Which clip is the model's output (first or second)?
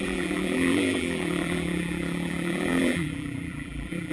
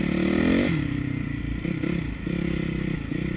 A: first